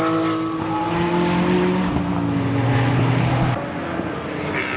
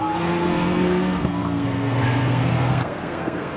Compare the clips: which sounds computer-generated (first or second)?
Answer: second